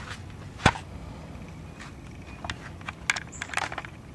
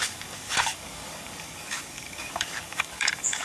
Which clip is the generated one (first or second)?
second